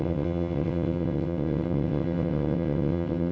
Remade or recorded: remade